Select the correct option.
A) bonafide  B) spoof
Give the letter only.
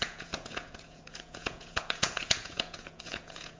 B